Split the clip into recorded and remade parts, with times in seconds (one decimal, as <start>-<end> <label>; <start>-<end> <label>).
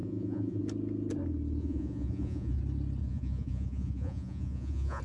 0.0-0.6 remade; 0.6-1.6 recorded; 1.6-2.6 remade; 2.6-3.0 recorded; 3.0-5.0 remade